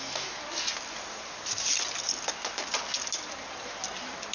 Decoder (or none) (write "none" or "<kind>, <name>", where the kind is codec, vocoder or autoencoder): none